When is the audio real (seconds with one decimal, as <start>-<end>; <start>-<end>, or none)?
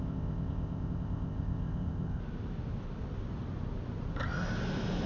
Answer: 2.2-5.1